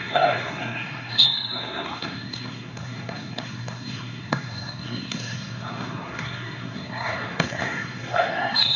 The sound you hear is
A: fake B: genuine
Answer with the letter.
A